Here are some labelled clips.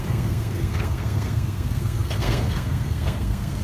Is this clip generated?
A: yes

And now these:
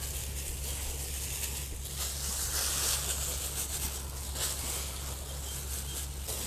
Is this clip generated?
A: no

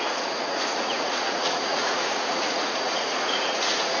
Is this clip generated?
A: yes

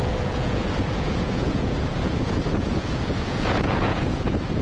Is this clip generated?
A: yes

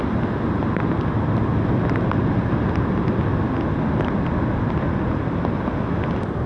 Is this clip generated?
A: no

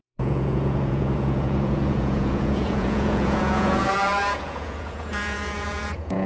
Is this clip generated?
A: yes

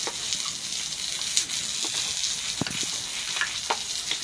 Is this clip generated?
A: no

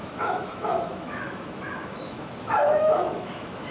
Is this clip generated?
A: yes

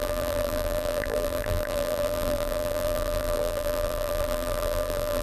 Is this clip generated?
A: yes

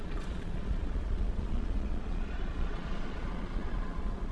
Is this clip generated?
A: yes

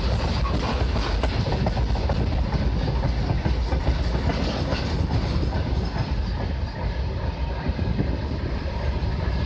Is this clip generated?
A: no